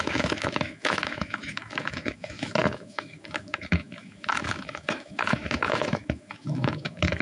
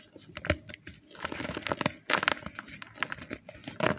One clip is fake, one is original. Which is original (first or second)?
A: second